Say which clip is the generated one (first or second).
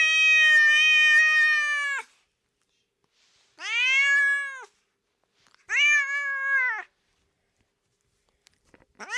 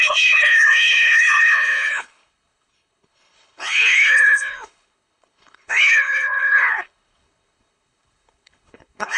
second